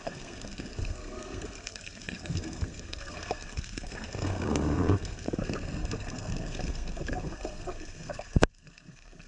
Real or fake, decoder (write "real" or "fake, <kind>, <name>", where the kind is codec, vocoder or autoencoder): fake, codec, SNAC